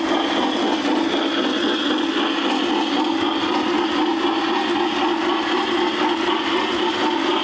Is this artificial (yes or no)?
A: no